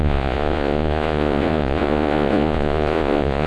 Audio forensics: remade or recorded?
remade